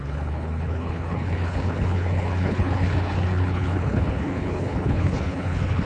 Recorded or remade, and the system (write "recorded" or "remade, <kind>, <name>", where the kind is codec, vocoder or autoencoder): remade, codec, HILCodec